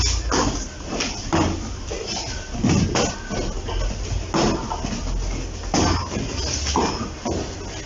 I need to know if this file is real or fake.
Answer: real